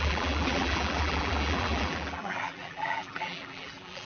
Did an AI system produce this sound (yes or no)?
yes